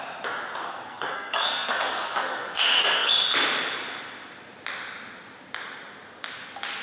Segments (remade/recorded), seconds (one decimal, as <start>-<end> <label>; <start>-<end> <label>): 0.0-0.6 recorded; 0.6-3.1 remade; 3.1-6.8 recorded